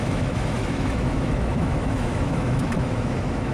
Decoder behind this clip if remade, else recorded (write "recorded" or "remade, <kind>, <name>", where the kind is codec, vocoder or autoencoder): remade, autoencoder, DAC-VAE